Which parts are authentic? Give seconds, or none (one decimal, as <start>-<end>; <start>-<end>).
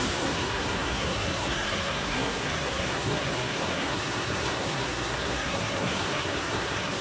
none